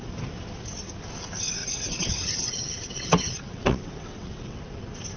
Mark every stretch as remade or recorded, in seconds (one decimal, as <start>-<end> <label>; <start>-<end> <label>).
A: 0.0-1.6 recorded; 1.6-4.6 remade; 4.6-5.2 recorded